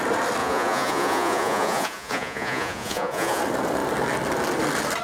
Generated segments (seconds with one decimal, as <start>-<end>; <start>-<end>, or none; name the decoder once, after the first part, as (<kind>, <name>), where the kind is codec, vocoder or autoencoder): 0.4-3.4 (vocoder, Vocos)